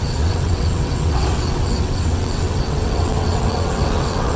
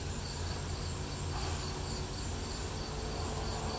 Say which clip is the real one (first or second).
second